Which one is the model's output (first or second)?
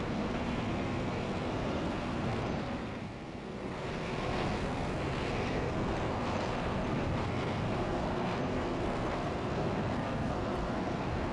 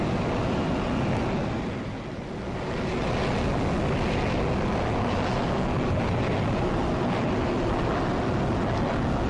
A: first